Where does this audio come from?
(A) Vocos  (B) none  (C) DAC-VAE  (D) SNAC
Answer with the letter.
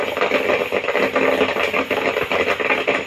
B